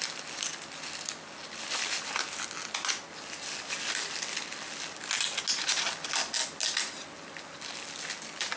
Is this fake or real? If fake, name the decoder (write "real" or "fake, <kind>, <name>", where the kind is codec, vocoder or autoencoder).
real